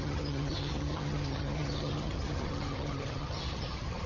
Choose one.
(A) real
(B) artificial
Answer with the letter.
B